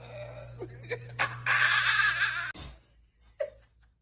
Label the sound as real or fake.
real